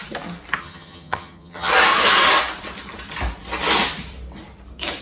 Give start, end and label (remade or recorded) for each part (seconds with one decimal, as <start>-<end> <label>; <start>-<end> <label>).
0.0-0.6 recorded; 0.6-1.7 remade; 1.7-5.0 recorded